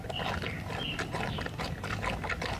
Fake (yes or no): no